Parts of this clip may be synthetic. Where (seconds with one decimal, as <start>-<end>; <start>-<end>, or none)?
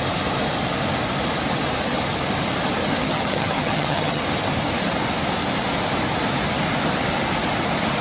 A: 3.0-4.2